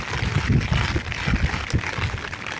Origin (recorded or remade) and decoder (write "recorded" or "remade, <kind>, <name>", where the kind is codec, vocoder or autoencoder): recorded